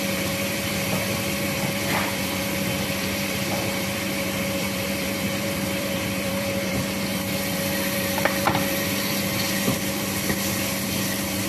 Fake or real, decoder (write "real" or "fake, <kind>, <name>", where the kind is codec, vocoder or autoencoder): fake, vocoder, BigVGAN v2